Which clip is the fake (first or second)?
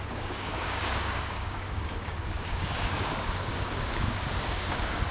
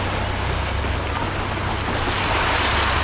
first